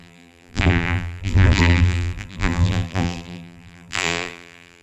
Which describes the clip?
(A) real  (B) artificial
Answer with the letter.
B